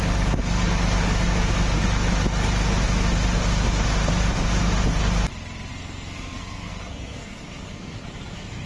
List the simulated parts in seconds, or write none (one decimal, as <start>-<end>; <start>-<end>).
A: 5.7-8.7